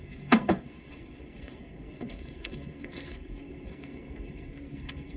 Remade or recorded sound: remade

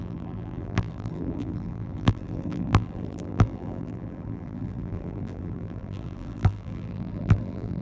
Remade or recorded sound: remade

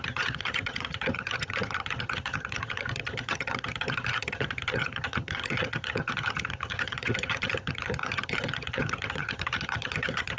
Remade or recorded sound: remade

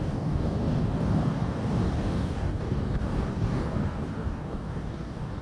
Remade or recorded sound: remade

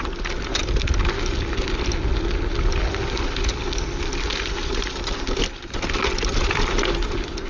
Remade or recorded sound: recorded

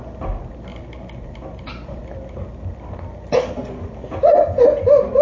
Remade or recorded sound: recorded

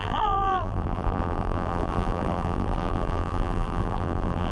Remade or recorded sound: remade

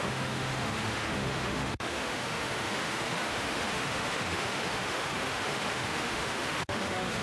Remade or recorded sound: remade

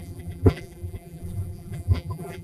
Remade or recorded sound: remade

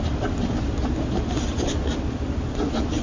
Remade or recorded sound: recorded